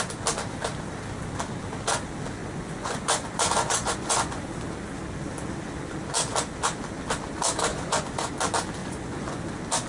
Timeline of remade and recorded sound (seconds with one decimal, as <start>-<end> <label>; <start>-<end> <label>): 0.0-2.4 recorded; 2.4-4.4 remade; 4.4-7.7 recorded; 7.7-8.3 remade; 8.3-8.8 recorded; 8.8-9.4 remade; 9.4-9.9 recorded